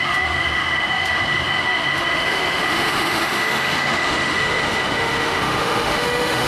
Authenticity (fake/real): fake